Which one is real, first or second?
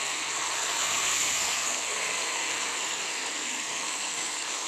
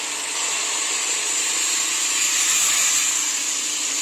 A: second